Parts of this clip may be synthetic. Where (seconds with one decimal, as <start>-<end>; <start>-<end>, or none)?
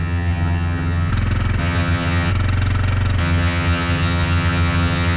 0.0-1.1; 1.6-2.3; 3.2-5.2